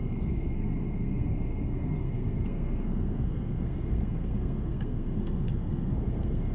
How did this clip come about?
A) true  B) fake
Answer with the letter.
B